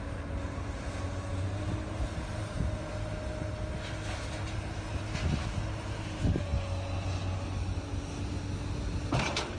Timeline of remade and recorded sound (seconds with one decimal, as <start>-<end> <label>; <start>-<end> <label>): 0.0-9.6 recorded